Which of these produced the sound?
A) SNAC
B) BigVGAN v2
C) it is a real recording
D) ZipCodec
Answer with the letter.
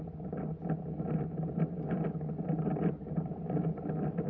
C